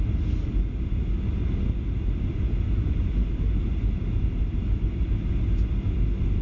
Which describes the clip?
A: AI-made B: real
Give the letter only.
B